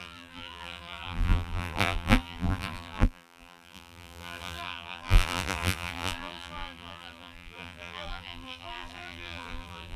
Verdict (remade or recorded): remade